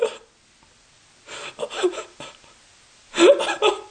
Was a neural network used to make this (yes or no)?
no